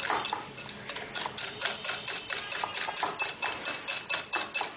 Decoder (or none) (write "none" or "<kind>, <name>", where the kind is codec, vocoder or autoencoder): none